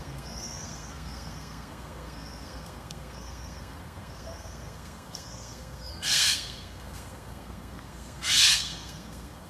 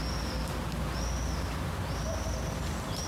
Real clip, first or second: second